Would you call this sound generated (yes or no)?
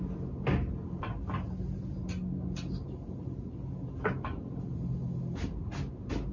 no